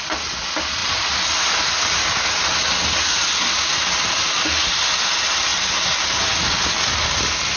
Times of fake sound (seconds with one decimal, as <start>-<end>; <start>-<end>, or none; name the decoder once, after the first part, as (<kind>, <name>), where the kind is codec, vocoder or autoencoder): none